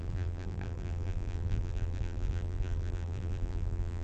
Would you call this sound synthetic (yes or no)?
yes